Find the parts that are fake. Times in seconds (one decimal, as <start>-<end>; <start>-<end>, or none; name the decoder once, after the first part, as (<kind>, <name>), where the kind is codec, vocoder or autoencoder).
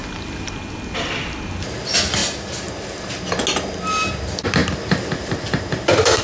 2.2-3.2 (vocoder, BigVGAN v2); 4.6-6.2